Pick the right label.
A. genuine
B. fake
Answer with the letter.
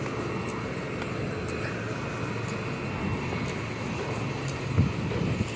A